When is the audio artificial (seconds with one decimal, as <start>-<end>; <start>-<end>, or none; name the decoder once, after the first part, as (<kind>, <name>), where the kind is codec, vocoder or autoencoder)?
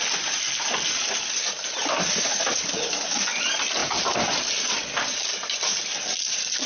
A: none